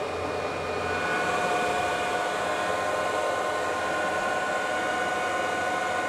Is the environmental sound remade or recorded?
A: recorded